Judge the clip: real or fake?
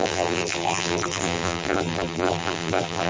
fake